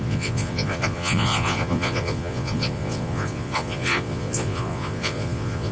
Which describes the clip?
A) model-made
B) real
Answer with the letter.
A